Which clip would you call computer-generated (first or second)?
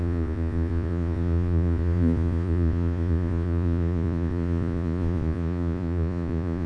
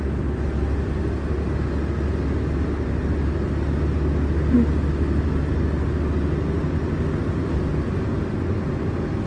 first